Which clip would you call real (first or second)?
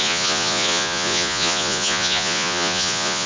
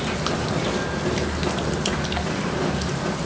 second